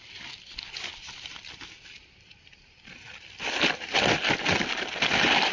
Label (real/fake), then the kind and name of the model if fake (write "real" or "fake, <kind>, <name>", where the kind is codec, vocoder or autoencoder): real